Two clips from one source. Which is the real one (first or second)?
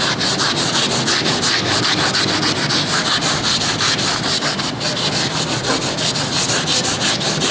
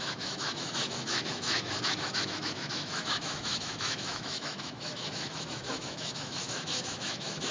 first